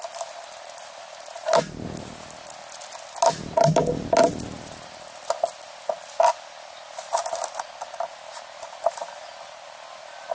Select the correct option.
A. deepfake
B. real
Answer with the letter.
B